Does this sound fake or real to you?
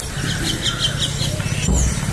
real